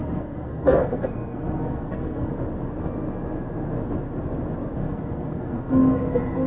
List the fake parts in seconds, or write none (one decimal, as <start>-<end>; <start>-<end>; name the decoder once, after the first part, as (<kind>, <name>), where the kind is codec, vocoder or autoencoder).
0.0-2.3 (codec, SNAC); 4.8-6.5